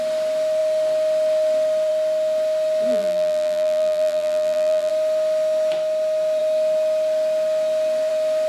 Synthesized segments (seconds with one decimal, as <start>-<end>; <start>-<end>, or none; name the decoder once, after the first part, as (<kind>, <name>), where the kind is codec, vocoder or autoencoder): 2.9-4.9 (vocoder, BigVGAN v2)

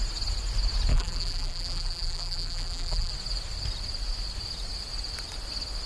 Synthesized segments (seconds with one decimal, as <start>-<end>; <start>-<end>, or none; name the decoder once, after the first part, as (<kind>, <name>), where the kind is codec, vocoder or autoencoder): 0.9-3.1 (vocoder, BigVGAN v2)

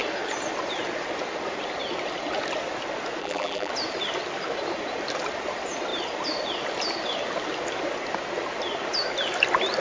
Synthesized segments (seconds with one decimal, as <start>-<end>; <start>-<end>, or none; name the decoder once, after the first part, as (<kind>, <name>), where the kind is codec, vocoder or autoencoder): 3.2-3.7 (vocoder, BigVGAN v2)

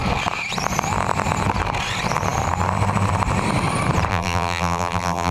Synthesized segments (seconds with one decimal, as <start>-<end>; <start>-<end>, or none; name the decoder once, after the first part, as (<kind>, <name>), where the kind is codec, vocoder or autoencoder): 4.1-5.3 (vocoder, BigVGAN v2)

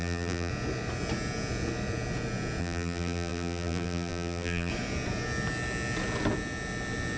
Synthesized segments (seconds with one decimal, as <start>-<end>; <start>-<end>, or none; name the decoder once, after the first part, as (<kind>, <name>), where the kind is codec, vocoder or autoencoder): 0.0-0.5 (vocoder, BigVGAN v2); 2.6-4.7